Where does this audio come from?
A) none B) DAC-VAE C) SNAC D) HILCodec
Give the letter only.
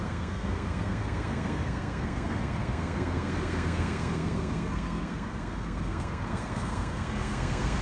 C